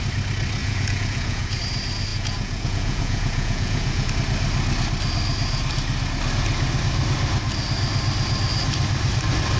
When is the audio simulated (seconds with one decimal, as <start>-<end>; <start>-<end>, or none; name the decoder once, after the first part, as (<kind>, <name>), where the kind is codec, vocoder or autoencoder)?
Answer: 0.6-1.6 (vocoder, Vocos); 2.1-4.1